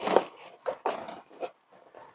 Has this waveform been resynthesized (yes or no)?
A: no